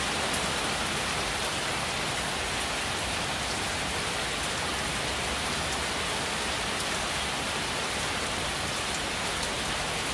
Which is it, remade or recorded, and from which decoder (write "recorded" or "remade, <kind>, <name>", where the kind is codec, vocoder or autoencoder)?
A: recorded